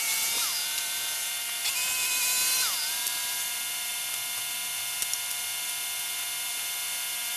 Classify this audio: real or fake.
real